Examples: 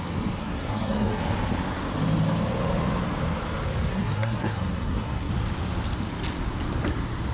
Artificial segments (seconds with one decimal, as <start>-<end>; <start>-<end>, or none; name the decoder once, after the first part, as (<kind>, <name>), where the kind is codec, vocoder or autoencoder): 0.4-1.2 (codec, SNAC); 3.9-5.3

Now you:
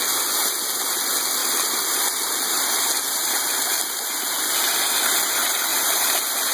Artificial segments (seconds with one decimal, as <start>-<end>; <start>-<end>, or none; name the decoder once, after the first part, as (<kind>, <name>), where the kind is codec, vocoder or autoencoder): none

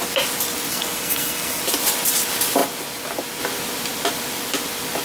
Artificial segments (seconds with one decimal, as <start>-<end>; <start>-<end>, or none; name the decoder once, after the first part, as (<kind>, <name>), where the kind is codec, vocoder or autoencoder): 0.7-1.6 (codec, SNAC)

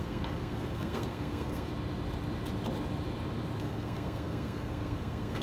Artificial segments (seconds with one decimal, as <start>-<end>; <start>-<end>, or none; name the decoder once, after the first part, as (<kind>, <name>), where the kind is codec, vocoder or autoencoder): 0.0-1.7 (codec, SNAC); 3.6-5.4

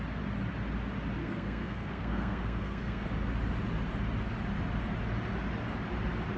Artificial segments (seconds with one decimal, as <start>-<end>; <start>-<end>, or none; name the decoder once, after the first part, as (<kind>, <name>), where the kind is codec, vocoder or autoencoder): 1.2-3.1 (codec, SNAC)

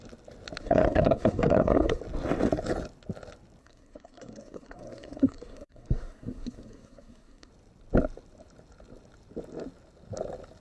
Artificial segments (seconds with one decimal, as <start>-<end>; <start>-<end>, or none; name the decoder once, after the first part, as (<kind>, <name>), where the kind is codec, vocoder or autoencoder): 0.6-2.0 (codec, SNAC); 3.6-7.5